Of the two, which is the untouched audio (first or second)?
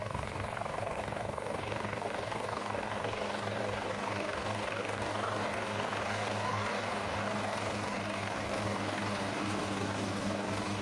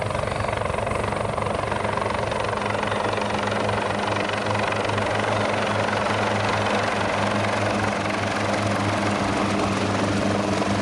second